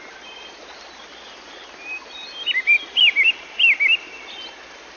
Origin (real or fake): real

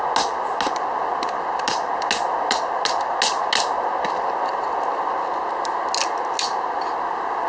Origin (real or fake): real